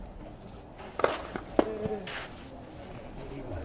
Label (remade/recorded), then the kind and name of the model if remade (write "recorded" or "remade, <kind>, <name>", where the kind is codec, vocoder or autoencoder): recorded